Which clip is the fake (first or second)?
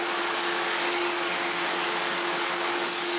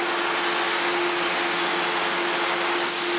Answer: first